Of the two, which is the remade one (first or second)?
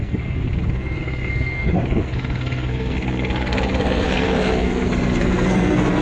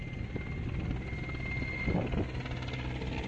first